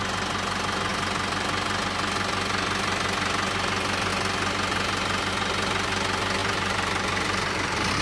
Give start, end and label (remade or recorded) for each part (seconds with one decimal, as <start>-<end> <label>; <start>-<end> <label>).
0.0-6.4 recorded; 6.4-8.0 remade